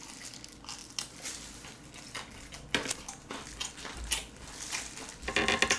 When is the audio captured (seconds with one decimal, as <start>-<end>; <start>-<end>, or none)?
0.0-5.8